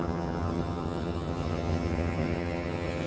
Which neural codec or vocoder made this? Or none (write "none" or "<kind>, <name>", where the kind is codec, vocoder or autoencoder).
vocoder, HiFi-GAN